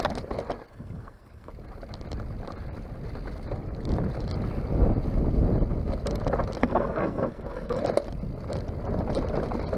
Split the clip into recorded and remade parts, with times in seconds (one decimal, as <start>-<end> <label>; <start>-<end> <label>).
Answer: 0.0-0.7 recorded; 0.7-1.5 remade; 1.5-6.6 recorded; 6.6-7.8 remade; 7.8-9.8 recorded